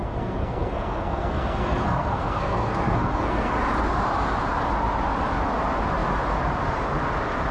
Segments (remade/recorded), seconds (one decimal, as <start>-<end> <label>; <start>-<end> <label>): 0.0-3.5 remade; 3.5-7.5 recorded